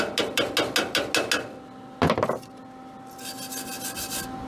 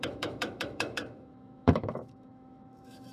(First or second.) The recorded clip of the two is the first